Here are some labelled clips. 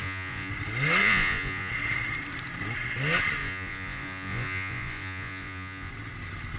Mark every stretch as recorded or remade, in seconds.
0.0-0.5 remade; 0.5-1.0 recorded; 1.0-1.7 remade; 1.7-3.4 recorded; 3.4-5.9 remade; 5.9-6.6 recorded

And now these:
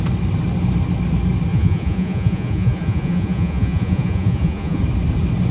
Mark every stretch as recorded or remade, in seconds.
0.0-1.5 recorded; 1.5-4.8 remade; 4.8-5.5 recorded

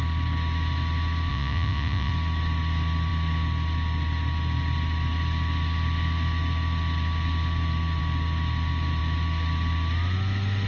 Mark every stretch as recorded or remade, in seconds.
0.0-1.3 recorded; 1.3-2.1 remade; 2.1-10.7 recorded

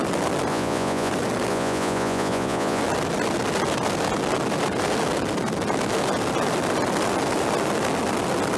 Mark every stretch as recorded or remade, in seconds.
0.0-0.5 recorded; 0.5-1.1 remade; 1.1-1.5 recorded; 1.5-2.8 remade; 2.8-8.6 recorded